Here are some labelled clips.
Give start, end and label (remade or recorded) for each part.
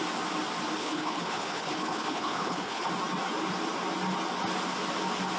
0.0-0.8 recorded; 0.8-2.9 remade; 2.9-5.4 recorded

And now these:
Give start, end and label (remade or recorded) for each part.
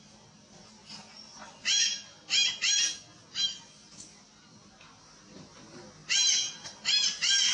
0.0-7.5 recorded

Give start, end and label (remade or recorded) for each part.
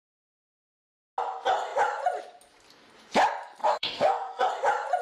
0.0-3.6 recorded; 3.6-4.5 remade; 4.5-5.0 recorded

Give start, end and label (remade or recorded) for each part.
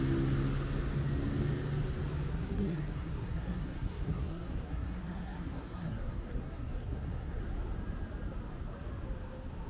0.0-2.3 recorded; 2.3-7.4 remade; 7.4-9.7 recorded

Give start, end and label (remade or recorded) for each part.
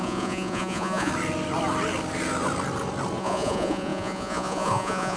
0.0-1.1 remade; 1.1-3.2 recorded; 3.2-5.2 remade